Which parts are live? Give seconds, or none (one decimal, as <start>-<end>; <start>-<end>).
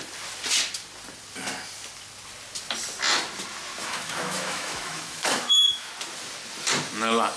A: 0.0-3.8; 5.9-7.4